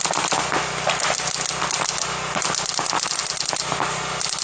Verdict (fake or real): real